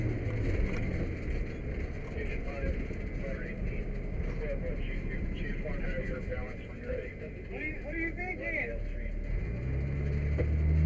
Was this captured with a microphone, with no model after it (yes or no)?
yes